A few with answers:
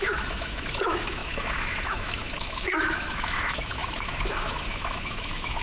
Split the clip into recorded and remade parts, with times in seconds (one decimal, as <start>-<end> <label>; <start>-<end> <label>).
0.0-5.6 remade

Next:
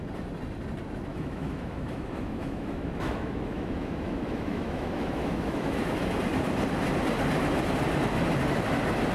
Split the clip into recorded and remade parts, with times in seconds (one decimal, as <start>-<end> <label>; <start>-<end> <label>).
0.0-1.1 recorded; 1.1-6.0 remade; 6.0-9.1 recorded

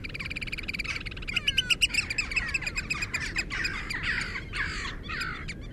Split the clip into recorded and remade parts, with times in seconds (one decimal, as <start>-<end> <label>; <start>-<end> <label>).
0.0-5.7 recorded

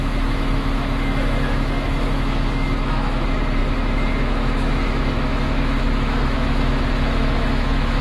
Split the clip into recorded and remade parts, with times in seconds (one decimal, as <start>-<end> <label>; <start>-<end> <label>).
0.0-8.0 remade

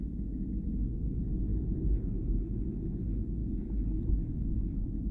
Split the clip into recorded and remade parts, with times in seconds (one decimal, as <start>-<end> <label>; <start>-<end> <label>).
0.0-1.5 recorded; 1.5-2.1 remade; 2.1-5.1 recorded

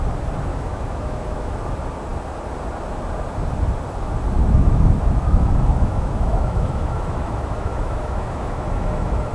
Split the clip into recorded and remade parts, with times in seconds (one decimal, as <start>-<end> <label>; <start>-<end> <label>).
0.0-0.5 recorded; 0.5-1.6 remade; 1.6-4.4 recorded; 4.4-9.3 remade

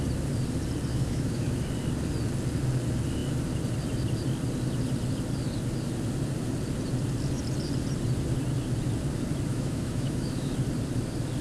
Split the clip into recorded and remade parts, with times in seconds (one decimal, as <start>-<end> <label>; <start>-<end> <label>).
0.0-0.9 recorded; 0.9-1.5 remade; 1.5-9.5 recorded; 9.5-10.5 remade; 10.5-11.4 recorded